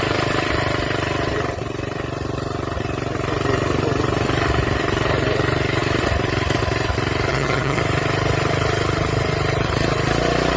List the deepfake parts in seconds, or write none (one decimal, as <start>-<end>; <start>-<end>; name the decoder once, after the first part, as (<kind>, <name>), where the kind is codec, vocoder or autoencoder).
7.3-7.8 (vocoder, HiFi-GAN)